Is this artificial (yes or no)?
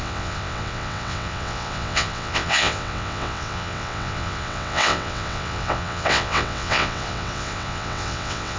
yes